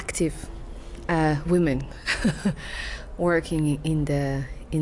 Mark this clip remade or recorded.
recorded